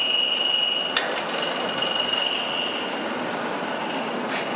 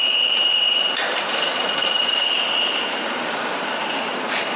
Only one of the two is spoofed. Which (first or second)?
second